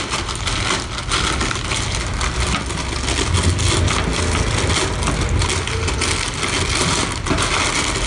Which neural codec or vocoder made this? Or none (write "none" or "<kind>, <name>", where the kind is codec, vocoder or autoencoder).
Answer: none